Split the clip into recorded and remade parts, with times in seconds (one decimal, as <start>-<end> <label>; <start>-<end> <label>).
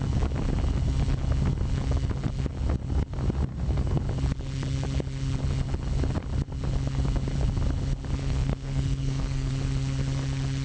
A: 0.0-3.5 recorded; 3.5-4.0 remade; 4.0-8.2 recorded; 8.2-9.5 remade; 9.5-10.6 recorded